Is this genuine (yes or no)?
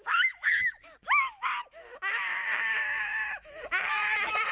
no